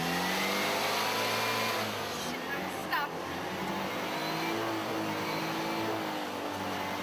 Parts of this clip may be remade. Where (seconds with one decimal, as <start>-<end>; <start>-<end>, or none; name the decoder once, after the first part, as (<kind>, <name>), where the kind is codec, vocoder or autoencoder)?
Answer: none